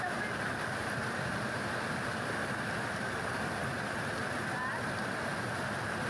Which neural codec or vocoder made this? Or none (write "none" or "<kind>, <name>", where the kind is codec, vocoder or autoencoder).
none